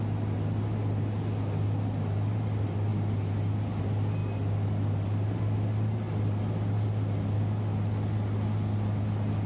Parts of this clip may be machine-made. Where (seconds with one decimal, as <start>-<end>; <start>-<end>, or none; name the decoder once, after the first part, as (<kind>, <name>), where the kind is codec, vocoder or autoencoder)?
none